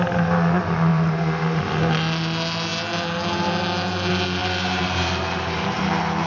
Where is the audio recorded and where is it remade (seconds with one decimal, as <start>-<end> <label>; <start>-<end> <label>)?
0.0-0.9 recorded; 0.9-1.6 remade; 1.6-4.4 recorded; 4.4-6.3 remade